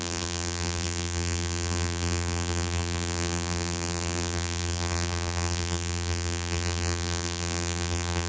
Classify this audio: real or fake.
fake